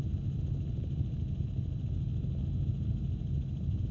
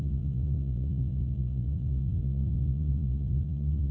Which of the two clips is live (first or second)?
first